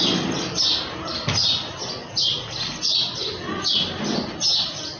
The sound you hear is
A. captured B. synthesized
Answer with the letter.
A